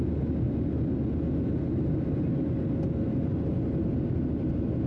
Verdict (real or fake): real